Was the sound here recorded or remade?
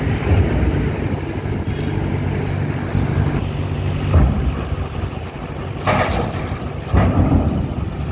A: recorded